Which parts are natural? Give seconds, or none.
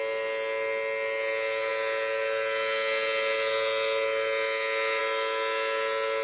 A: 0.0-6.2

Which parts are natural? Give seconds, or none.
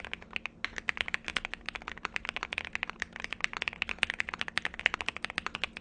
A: 0.0-5.8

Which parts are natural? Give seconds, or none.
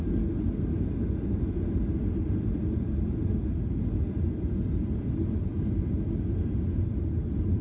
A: 0.0-7.6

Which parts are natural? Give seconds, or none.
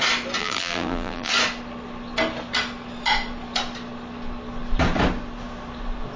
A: 0.0-0.4; 1.3-6.2